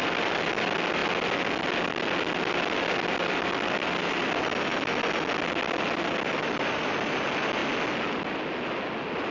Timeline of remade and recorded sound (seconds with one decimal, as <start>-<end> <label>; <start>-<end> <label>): 0.0-1.0 remade; 1.0-2.4 recorded; 2.4-4.7 remade; 4.7-6.1 recorded; 6.1-7.6 remade; 7.6-9.3 recorded